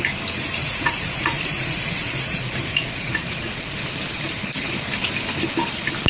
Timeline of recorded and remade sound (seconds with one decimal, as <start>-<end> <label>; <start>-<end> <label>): 0.0-0.6 recorded; 0.6-3.8 remade; 3.8-6.1 recorded